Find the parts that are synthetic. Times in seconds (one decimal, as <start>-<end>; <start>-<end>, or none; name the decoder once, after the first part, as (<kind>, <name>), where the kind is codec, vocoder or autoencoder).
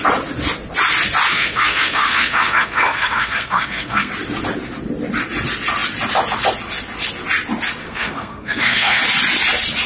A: 1.3-4.1 (codec, SNAC); 7.8-9.0